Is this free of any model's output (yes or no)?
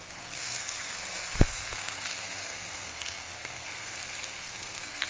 no